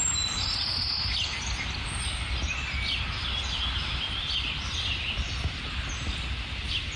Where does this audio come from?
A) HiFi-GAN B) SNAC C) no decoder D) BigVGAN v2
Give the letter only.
C